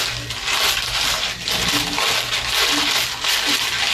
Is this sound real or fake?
real